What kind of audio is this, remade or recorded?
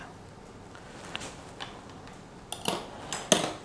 recorded